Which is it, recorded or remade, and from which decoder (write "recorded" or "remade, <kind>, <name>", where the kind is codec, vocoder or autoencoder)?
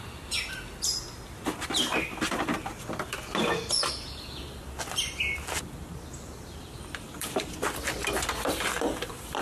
recorded